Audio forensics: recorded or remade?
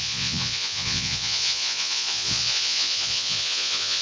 remade